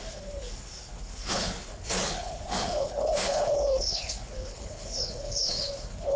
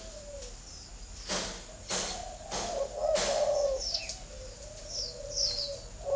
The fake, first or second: first